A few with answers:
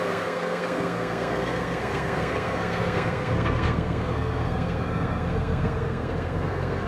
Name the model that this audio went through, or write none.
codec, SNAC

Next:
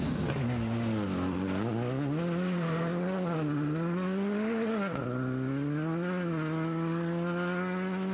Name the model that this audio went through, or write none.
none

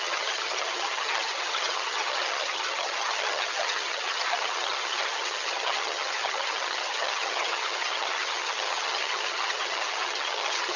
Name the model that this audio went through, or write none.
vocoder, HiFi-GAN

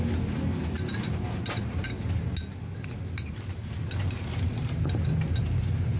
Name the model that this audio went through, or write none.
none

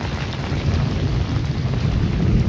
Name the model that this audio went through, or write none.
none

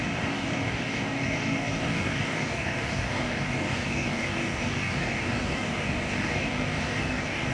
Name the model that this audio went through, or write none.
codec, DAC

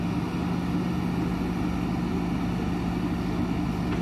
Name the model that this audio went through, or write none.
none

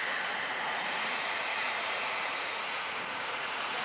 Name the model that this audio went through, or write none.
vocoder, Vocos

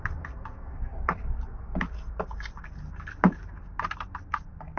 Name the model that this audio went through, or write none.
none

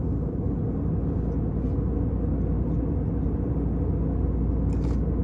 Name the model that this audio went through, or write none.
none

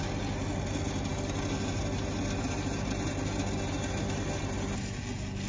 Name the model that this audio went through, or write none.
none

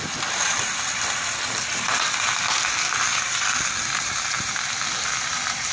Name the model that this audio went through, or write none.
none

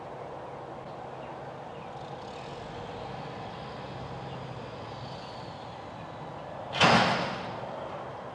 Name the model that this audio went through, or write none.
none